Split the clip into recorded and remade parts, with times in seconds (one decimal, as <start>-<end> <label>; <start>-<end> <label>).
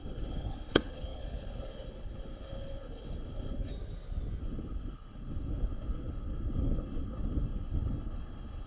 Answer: 0.0-3.7 remade; 3.7-4.4 recorded; 4.4-8.7 remade